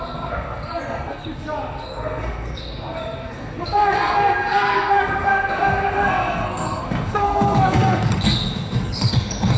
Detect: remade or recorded remade